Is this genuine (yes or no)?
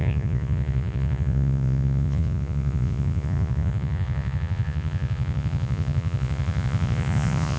no